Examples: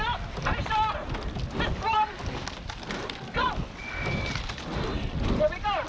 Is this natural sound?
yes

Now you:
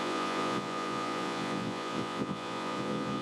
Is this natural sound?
no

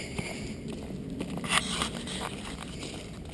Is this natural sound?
yes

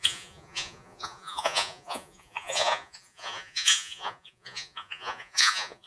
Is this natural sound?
no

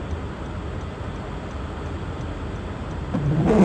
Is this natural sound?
yes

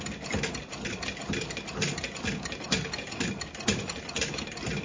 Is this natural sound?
yes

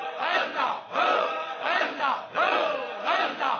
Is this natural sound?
no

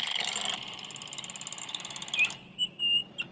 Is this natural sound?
yes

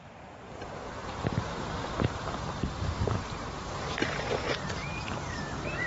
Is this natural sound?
no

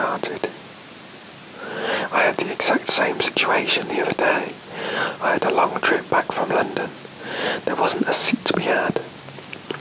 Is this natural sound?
yes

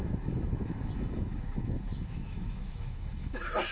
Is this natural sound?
no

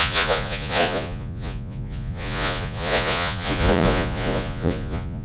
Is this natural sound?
no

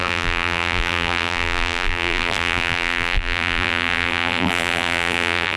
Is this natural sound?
no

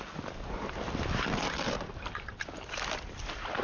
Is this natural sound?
yes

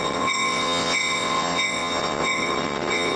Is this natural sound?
no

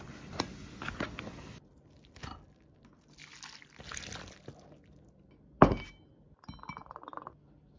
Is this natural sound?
yes